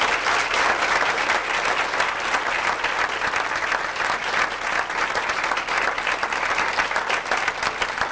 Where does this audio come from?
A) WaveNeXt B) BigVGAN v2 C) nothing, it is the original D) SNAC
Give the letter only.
C